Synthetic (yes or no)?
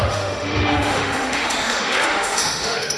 yes